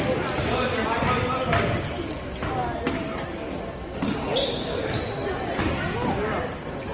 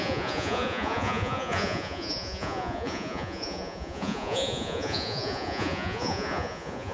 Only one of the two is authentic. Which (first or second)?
first